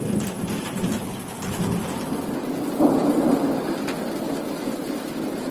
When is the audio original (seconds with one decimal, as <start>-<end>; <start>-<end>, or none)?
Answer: 0.0-5.5